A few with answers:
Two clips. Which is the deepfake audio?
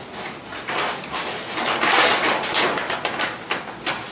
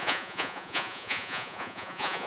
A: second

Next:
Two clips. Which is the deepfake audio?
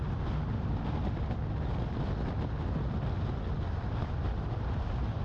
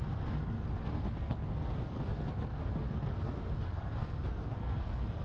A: second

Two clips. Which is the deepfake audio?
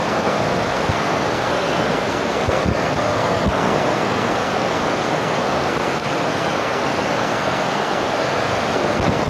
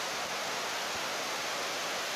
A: first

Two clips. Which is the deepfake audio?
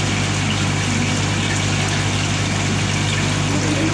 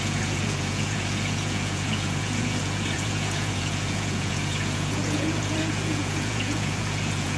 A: second